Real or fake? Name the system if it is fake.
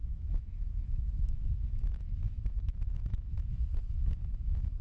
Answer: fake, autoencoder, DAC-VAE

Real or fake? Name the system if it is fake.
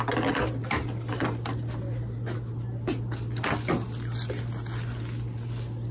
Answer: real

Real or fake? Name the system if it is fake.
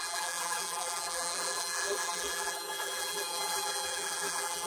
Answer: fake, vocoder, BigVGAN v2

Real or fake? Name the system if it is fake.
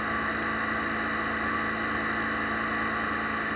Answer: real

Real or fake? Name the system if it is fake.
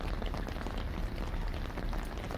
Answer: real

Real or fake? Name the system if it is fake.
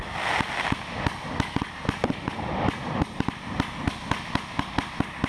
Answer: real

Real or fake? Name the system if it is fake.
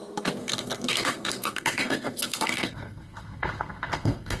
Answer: fake, codec, SNAC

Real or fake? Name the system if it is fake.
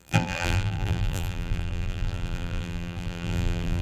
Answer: fake, vocoder, BigVGAN v2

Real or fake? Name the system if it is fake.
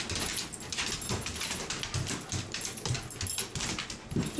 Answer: real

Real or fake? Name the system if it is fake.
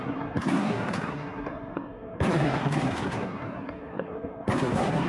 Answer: fake, codec, SNAC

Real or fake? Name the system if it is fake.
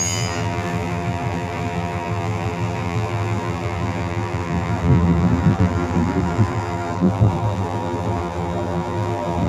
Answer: fake, vocoder, BigVGAN v2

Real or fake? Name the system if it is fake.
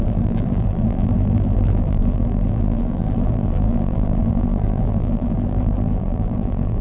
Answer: fake, vocoder, BigVGAN v2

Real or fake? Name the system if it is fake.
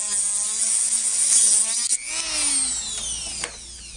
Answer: real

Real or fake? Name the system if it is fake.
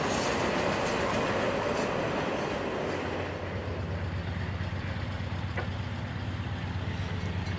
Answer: real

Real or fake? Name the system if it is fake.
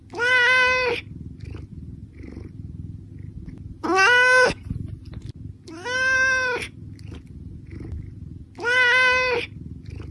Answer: real